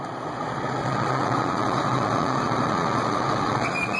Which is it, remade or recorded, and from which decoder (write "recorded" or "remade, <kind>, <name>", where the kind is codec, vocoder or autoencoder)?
remade, vocoder, Vocos